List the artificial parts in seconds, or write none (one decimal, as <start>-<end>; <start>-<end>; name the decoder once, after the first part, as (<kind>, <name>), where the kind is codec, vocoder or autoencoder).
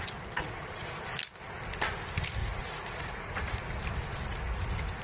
2.4-3.6 (vocoder, Vocos)